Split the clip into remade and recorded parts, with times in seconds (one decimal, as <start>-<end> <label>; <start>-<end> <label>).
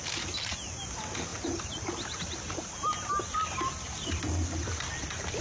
0.0-1.3 recorded; 1.3-4.2 remade; 4.2-5.4 recorded